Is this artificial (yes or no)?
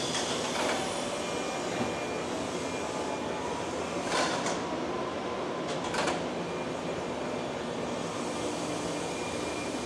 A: no